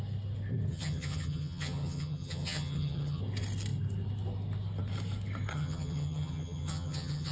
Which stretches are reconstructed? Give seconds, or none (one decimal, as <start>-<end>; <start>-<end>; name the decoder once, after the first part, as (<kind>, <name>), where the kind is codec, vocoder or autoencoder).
0.7-3.2 (vocoder, HiFi-GAN); 5.5-7.3